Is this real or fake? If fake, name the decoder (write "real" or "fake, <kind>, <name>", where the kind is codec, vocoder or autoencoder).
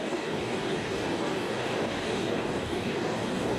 fake, codec, DAC